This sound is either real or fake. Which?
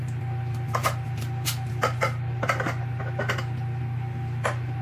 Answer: real